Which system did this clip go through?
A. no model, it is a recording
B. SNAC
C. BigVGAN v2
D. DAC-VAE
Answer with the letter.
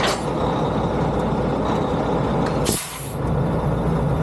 A